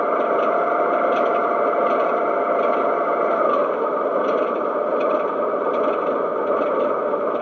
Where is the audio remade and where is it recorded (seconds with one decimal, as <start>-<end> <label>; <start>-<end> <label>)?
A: 0.0-1.4 remade; 1.4-2.1 recorded; 2.1-7.4 remade